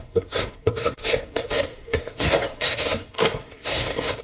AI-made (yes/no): yes